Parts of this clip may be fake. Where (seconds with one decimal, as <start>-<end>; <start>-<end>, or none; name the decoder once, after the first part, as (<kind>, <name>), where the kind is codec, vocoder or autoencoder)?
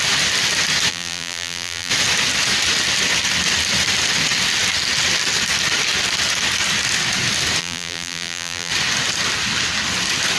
0.9-1.9 (vocoder, BigVGAN v2); 7.6-8.7